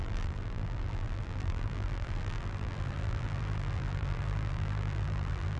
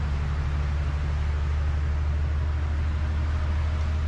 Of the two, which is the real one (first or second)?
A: second